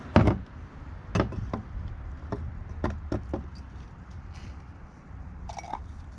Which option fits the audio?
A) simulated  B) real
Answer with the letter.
B